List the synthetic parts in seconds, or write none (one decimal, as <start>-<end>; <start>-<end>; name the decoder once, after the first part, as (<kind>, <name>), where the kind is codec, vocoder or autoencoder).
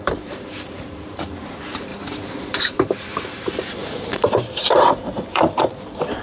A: 0.0-6.2 (vocoder, BigVGAN v2)